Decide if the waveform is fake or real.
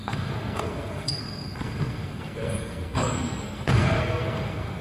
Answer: fake